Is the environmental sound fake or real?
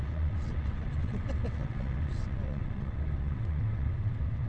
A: fake